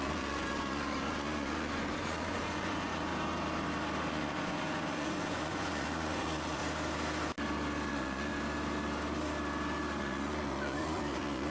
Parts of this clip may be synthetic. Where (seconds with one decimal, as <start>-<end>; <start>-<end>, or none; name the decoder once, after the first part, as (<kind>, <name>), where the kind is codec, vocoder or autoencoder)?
0.0-3.1 (vocoder, Vocos); 4.1-6.6; 7.9-8.3; 10.0-11.5